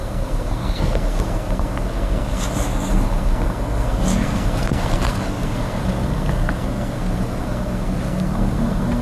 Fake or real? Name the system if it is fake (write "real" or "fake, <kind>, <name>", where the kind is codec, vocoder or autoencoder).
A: fake, codec, SNAC